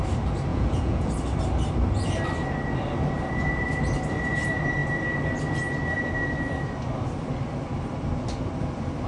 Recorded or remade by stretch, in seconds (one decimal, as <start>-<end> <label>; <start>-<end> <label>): 0.0-0.5 recorded; 0.5-1.1 remade; 1.1-9.1 recorded